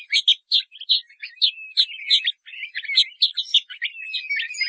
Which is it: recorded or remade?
recorded